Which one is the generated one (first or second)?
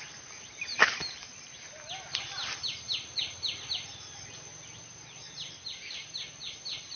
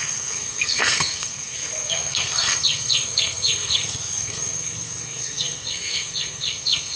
second